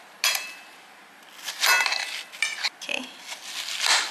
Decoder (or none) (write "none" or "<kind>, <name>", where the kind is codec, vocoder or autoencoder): none